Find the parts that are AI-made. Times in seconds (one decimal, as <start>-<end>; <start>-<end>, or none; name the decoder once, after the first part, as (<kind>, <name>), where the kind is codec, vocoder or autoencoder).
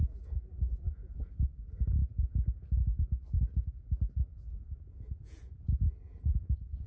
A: 0.0-1.5 (vocoder, Vocos); 4.3-6.9